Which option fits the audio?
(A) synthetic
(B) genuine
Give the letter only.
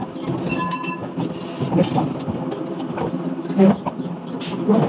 B